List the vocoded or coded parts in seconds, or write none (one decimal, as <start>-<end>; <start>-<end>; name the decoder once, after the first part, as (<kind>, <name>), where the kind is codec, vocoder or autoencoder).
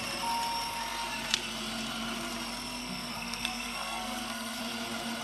2.8-4.6 (codec, SNAC)